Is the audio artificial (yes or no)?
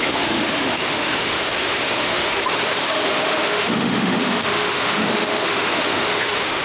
yes